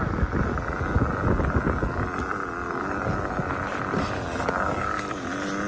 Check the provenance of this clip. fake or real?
real